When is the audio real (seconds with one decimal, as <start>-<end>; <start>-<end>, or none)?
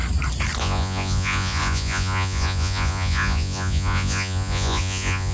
0.0-0.6